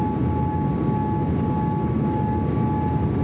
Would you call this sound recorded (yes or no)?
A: yes